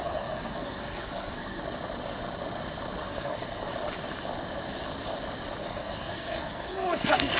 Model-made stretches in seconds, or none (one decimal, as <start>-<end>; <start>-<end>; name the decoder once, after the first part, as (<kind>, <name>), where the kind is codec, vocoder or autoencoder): 0.0-1.6 (codec, SNAC); 3.0-3.7; 5.6-7.4